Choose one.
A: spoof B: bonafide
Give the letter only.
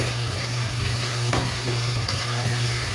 A